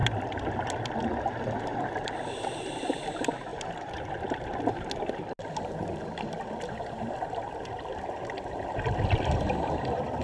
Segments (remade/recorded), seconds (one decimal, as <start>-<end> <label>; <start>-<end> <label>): 0.0-10.2 recorded